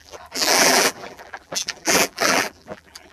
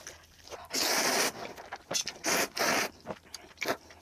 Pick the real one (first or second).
second